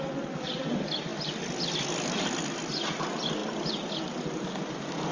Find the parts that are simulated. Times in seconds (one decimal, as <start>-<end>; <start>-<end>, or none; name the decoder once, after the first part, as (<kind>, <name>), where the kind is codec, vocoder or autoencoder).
none